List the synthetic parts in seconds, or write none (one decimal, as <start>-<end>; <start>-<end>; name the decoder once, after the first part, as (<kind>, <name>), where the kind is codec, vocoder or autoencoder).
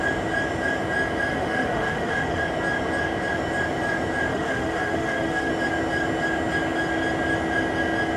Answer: 1.3-2.4 (autoencoder, DAC-VAE); 4.3-5.5